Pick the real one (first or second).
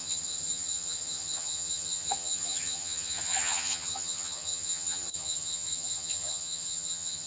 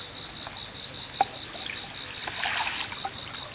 second